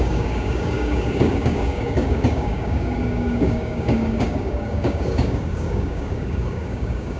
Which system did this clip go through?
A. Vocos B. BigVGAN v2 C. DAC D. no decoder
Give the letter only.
C